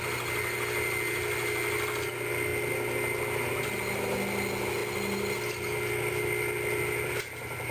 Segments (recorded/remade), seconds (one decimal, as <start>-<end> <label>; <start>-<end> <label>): 0.0-7.7 recorded